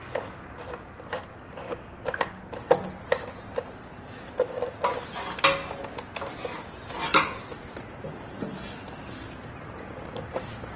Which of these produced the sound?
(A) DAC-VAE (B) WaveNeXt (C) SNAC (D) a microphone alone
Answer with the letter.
D